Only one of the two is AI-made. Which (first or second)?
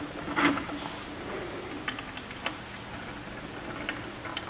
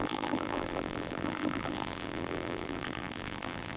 second